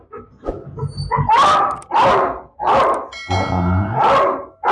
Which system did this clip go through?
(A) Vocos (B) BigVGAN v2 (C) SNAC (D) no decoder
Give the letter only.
D